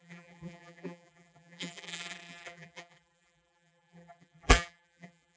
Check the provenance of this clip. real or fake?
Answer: fake